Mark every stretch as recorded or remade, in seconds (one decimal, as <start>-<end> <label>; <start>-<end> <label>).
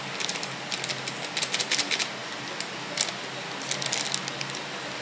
0.0-5.0 recorded